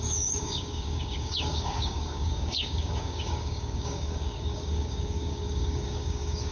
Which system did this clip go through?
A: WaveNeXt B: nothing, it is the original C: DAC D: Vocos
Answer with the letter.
C